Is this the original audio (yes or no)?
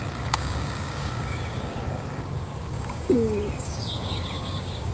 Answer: no